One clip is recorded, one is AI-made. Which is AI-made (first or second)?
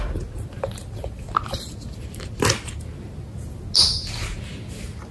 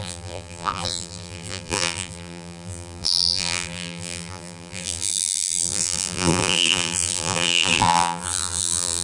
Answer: second